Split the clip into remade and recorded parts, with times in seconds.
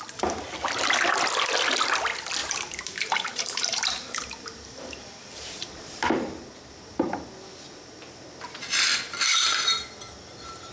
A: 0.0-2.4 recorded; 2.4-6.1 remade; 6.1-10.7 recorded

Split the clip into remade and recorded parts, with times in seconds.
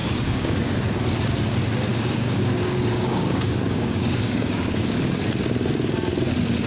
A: 0.0-0.7 remade; 0.7-1.9 recorded; 1.9-5.2 remade; 5.2-6.7 recorded